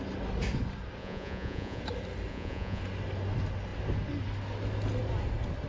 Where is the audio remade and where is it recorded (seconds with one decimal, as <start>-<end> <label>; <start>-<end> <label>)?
0.0-1.0 recorded; 1.0-1.8 remade; 1.8-2.3 recorded; 2.3-2.8 remade; 2.8-5.7 recorded